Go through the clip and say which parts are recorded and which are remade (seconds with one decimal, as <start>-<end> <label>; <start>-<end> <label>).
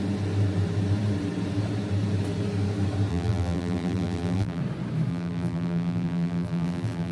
0.0-3.1 recorded; 3.1-4.6 remade; 4.6-5.1 recorded; 5.1-7.1 remade